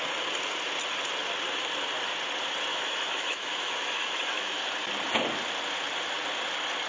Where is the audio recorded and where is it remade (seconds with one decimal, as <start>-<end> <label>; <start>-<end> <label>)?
0.0-2.7 recorded; 2.7-4.6 remade; 4.6-6.9 recorded